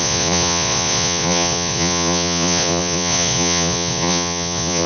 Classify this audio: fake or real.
fake